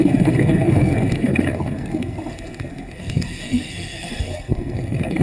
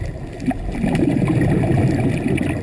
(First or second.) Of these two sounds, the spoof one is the first